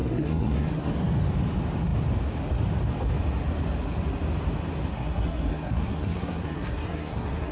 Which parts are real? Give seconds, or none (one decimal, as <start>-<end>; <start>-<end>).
0.9-4.9